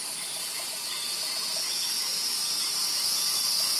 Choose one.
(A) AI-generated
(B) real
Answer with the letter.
B